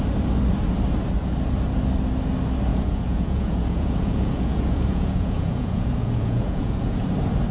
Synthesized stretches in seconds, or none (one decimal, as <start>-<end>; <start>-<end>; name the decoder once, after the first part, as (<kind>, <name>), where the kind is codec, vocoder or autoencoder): 2.7-7.1 (vocoder, Vocos)